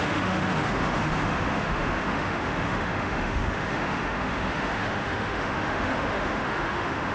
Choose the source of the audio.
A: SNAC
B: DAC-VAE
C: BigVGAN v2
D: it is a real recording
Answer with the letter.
B